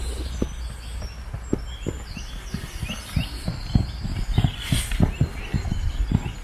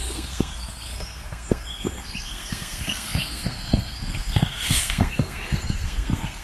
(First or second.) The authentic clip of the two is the first